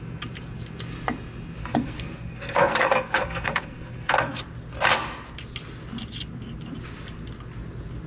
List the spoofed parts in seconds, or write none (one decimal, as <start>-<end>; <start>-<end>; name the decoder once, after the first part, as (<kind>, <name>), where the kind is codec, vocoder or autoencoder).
1.6-4.4 (codec, SNAC)